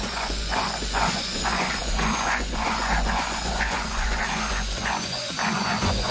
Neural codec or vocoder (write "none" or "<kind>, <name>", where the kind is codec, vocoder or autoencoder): vocoder, Vocos